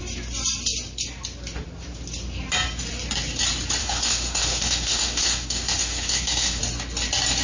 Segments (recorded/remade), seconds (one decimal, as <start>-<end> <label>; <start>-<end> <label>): 0.0-3.8 recorded; 3.8-6.6 remade; 6.6-7.4 recorded